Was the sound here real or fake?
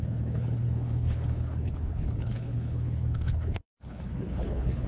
fake